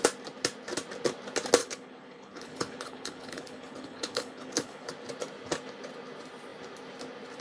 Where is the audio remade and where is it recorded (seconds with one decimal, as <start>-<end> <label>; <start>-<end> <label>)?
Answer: 0.0-1.6 recorded; 1.6-4.9 remade; 4.9-7.4 recorded